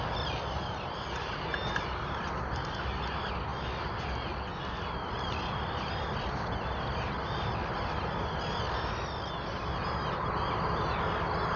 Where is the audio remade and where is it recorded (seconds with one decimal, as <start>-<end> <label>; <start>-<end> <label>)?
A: 0.0-11.6 recorded